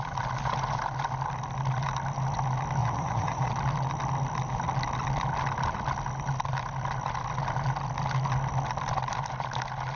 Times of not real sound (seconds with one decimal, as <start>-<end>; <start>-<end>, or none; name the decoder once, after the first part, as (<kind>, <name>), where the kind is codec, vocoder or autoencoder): 2.8-3.5 (vocoder, Vocos)